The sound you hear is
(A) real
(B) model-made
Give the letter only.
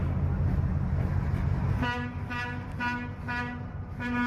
A